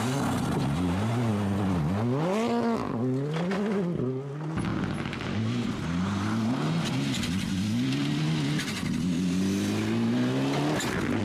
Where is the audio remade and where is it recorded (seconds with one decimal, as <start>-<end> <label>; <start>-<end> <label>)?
0.0-11.2 recorded

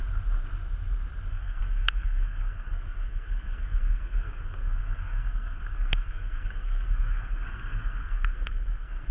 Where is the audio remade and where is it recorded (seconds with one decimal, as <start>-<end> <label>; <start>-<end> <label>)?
0.0-1.3 recorded; 1.3-9.1 remade

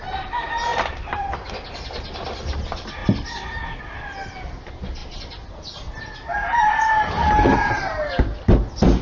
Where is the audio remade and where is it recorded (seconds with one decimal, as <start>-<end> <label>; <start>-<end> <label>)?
0.0-0.7 recorded; 0.7-1.5 remade; 1.5-3.0 recorded; 3.0-3.8 remade; 3.8-9.0 recorded